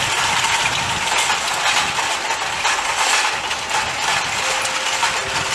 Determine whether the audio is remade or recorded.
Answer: recorded